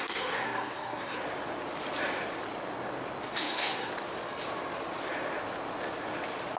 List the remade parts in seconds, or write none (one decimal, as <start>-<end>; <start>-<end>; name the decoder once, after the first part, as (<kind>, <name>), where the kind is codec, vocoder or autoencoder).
0.0-1.2 (codec, SNAC); 3.4-3.9